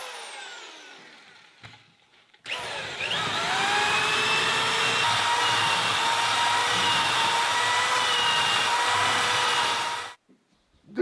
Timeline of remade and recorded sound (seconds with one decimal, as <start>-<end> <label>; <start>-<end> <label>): 0.0-2.1 recorded; 2.1-4.5 remade; 4.5-6.6 recorded; 6.6-10.3 remade; 10.3-11.0 recorded